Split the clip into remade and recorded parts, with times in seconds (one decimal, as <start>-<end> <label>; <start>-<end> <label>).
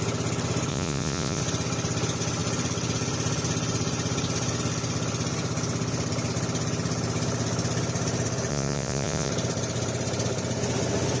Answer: 0.0-0.7 recorded; 0.7-1.4 remade; 1.4-8.5 recorded; 8.5-9.3 remade; 9.3-11.2 recorded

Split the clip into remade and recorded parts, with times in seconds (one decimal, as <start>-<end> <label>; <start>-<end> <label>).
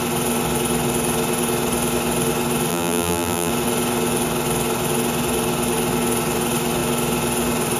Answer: 0.0-2.7 recorded; 2.7-3.5 remade; 3.5-7.8 recorded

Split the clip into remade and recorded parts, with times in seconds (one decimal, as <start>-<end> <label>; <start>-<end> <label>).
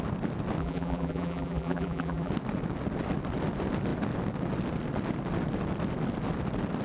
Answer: 0.0-0.6 recorded; 0.6-2.3 remade; 2.3-6.8 recorded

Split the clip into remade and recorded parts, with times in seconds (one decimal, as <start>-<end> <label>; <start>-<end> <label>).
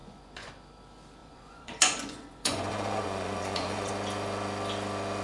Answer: 0.0-0.5 remade; 0.5-1.2 recorded; 1.2-3.9 remade; 3.9-5.2 recorded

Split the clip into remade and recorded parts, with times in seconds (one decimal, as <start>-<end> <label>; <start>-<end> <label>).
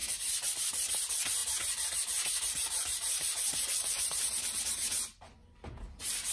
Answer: 0.0-1.4 recorded; 1.4-4.2 remade; 4.2-4.7 recorded; 4.7-5.2 remade; 5.2-6.3 recorded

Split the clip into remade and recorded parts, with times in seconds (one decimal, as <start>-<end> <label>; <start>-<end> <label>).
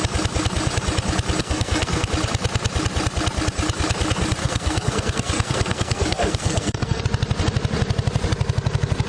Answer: 0.0-1.4 recorded; 1.4-2.1 remade; 2.1-4.4 recorded; 4.4-7.0 remade; 7.0-9.1 recorded